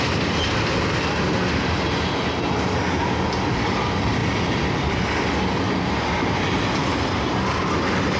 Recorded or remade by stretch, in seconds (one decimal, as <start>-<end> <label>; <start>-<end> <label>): 0.0-8.2 recorded